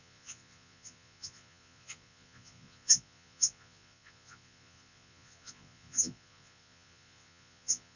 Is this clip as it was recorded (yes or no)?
no